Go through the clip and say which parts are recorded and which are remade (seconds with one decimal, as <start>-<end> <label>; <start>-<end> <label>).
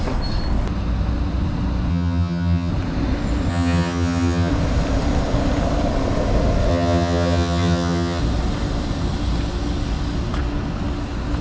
0.0-1.9 recorded; 1.9-2.7 remade; 2.7-3.5 recorded; 3.5-4.5 remade; 4.5-6.7 recorded; 6.7-8.2 remade; 8.2-11.4 recorded